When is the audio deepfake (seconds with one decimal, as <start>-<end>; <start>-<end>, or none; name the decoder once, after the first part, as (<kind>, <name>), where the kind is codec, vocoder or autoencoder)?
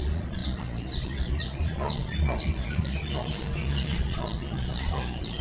0.0-5.4 (vocoder, Vocos)